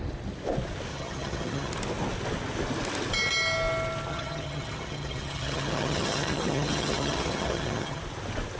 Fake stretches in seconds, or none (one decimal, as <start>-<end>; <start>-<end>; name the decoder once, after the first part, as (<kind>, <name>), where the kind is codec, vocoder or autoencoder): 0.9-1.7 (vocoder, HiFi-GAN); 4.1-8.0